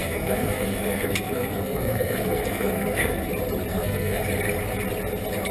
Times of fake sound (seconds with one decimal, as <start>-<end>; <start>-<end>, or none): 0.0-3.3; 3.7-4.2

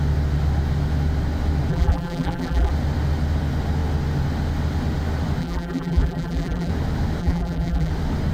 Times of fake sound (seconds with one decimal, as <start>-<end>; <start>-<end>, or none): 1.7-2.7; 5.4-6.7; 7.2-7.9

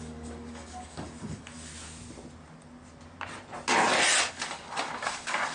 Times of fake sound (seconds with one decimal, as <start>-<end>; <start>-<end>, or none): 0.0-1.7; 4.3-5.5

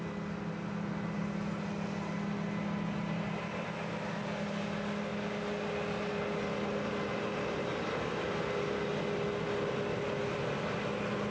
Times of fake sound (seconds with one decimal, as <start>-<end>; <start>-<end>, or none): none